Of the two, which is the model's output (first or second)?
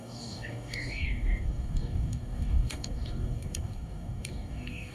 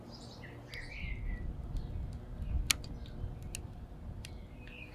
first